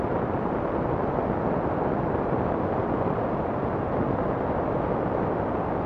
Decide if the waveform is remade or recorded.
recorded